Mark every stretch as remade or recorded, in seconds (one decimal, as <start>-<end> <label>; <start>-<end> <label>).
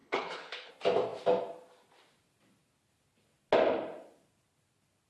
0.0-0.7 remade; 0.7-5.1 recorded